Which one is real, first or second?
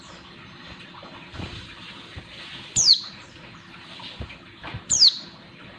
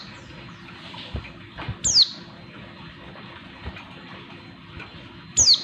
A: second